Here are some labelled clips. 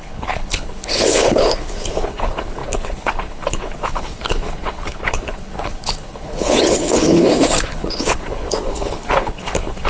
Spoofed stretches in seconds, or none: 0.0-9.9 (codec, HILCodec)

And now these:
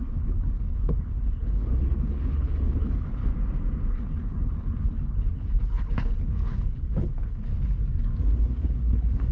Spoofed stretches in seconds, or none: 0.0-3.3 (codec, HILCodec); 3.9-7.8; 8.4-9.3

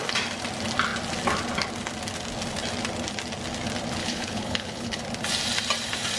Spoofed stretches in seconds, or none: 4.0-5.0 (codec, HILCodec)

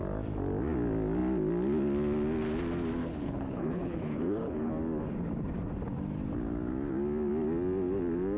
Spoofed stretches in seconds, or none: 3.0-4.7 (codec, HILCodec)

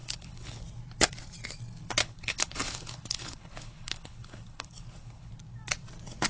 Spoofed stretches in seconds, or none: 0.0-0.6 (codec, HILCodec); 2.0-5.3